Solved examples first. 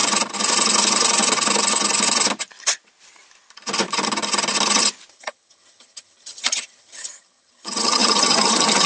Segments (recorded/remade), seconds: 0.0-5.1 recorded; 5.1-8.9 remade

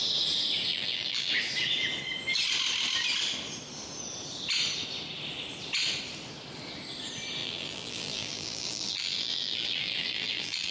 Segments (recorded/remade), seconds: 0.0-0.7 recorded; 0.7-1.3 remade; 1.3-7.4 recorded; 7.4-10.7 remade

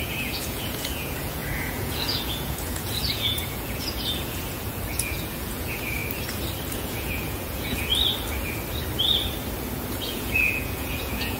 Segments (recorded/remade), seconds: 0.0-6.0 remade; 6.0-6.7 recorded; 6.7-7.9 remade; 7.9-9.9 recorded; 9.9-11.4 remade

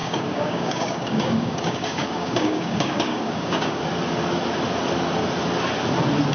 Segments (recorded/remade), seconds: 0.0-3.8 remade; 3.8-6.3 recorded

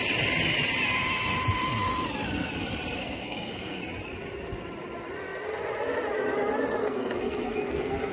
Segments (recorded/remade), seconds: 0.0-3.0 recorded; 3.0-3.8 remade; 3.8-6.8 recorded; 6.8-8.1 remade

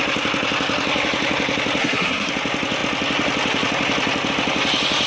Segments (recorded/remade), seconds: 0.0-1.8 recorded; 1.8-2.3 remade; 2.3-5.1 recorded

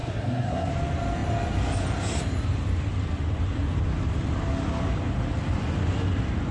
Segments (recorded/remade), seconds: 0.0-0.7 remade; 0.7-6.5 recorded